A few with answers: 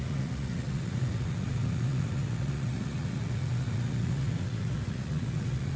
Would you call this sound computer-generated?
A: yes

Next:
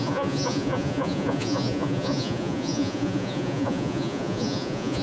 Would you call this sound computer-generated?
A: yes